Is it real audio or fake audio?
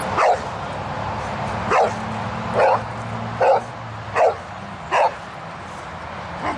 real